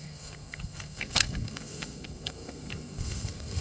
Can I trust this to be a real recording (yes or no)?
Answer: no